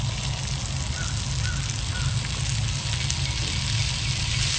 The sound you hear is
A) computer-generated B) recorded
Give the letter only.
B